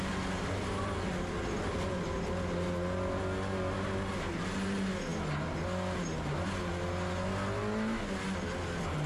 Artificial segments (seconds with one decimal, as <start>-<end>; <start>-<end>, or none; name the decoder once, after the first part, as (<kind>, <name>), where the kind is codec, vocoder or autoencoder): none